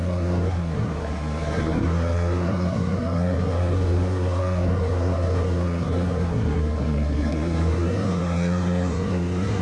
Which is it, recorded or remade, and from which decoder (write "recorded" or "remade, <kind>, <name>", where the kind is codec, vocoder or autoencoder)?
remade, codec, SNAC